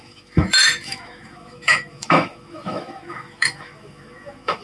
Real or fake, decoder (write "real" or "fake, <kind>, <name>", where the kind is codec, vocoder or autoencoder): fake, autoencoder, DAC-VAE